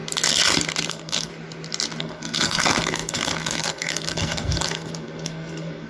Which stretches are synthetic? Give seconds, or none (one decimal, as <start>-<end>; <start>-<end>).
0.9-1.3; 2.0-5.9